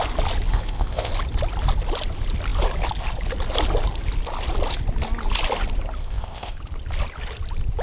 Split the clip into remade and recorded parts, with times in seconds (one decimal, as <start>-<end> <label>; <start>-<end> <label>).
0.0-0.5 recorded; 0.5-1.1 remade; 1.1-6.0 recorded; 6.0-6.6 remade; 6.6-7.8 recorded